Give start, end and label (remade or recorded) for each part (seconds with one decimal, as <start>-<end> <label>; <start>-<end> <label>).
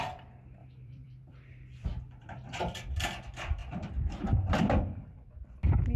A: 0.0-0.6 recorded; 0.6-2.6 remade; 2.6-3.6 recorded; 3.6-4.2 remade; 4.2-6.0 recorded